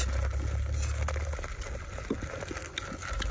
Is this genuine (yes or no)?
yes